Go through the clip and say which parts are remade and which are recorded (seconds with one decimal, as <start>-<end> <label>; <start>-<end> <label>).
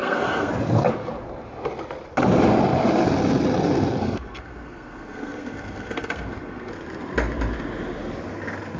0.0-0.5 remade; 0.5-4.0 recorded; 4.0-6.7 remade; 6.7-8.8 recorded